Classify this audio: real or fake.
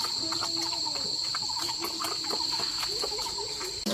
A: real